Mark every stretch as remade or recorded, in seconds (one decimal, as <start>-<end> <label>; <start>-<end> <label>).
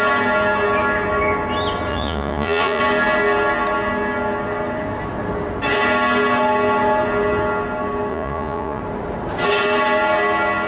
0.0-1.9 recorded; 1.9-2.8 remade; 2.8-8.1 recorded; 8.1-8.8 remade; 8.8-10.7 recorded